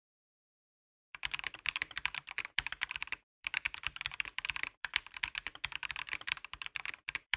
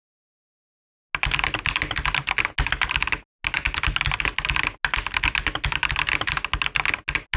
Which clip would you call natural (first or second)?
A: second